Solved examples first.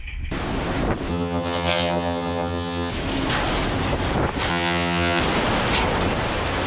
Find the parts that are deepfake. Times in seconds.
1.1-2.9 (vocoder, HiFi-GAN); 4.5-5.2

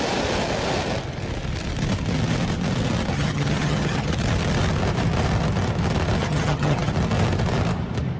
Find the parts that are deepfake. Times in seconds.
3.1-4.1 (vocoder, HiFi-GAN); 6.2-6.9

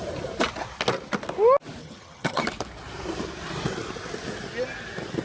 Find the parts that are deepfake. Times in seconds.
1.8-2.4 (vocoder, HiFi-GAN)

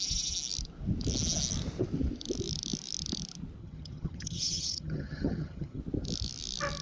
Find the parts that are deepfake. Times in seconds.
3.6-5.8 (vocoder, HiFi-GAN)

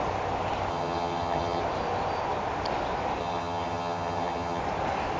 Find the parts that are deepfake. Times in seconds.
0.7-1.6 (vocoder, HiFi-GAN); 3.2-4.6